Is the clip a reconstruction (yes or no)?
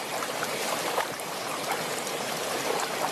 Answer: yes